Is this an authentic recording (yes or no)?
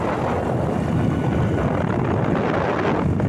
yes